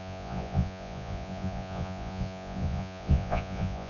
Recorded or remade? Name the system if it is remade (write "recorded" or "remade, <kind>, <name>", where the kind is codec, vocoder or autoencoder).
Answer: remade, vocoder, Vocos